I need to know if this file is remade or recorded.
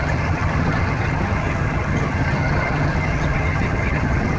remade